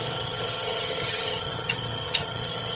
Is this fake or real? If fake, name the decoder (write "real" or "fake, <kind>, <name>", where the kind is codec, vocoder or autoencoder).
fake, vocoder, HiFi-GAN